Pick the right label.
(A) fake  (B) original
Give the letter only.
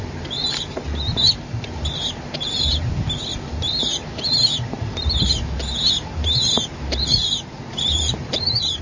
A